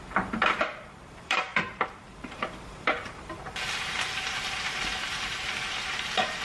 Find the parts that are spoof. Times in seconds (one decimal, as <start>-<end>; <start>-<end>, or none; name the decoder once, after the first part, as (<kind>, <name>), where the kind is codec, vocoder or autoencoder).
0.0-6.4 (vocoder, BigVGAN v2)